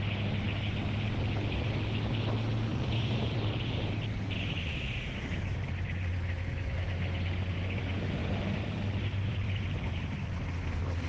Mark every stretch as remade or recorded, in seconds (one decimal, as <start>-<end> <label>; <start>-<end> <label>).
0.0-2.7 recorded; 2.7-3.9 remade; 3.9-8.2 recorded; 8.2-10.3 remade; 10.3-11.1 recorded